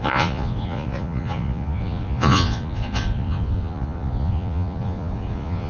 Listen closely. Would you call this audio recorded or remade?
remade